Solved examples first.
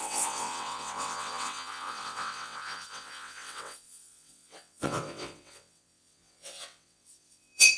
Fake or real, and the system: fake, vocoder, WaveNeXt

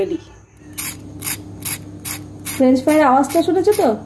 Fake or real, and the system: real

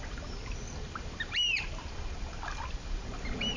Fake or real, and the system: fake, vocoder, BigVGAN v2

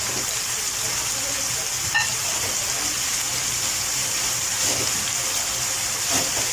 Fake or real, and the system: fake, vocoder, BigVGAN v2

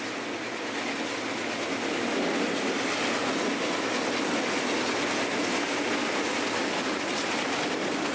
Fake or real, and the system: real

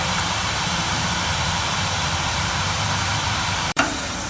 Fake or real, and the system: fake, vocoder, BigVGAN v2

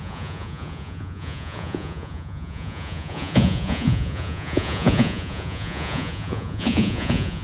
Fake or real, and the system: fake, vocoder, Vocos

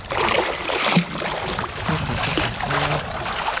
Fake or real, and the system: real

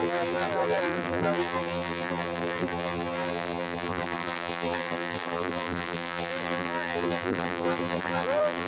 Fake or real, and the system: fake, vocoder, BigVGAN v2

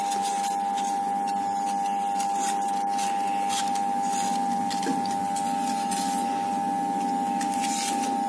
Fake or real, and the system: real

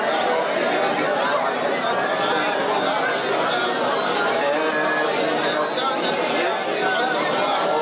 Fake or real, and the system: real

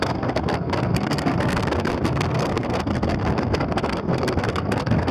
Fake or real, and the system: fake, codec, SNAC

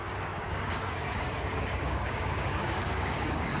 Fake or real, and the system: fake, codec, DAC